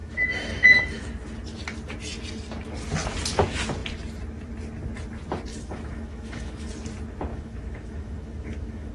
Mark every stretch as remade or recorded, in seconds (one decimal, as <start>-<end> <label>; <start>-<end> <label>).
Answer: 0.0-1.1 remade; 1.1-5.5 recorded; 5.5-6.7 remade; 6.7-7.3 recorded; 7.3-8.9 remade